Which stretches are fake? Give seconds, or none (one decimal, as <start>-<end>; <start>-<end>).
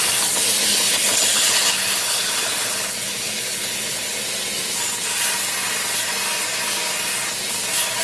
0.7-4.2